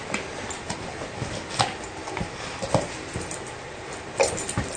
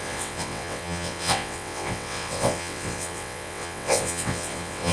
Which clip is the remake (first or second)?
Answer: second